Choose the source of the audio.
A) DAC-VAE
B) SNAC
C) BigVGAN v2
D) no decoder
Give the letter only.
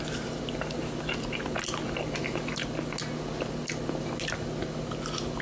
D